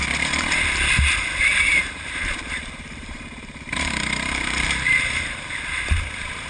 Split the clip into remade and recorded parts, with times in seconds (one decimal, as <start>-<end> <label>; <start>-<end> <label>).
0.0-1.5 recorded; 1.5-5.4 remade; 5.4-6.5 recorded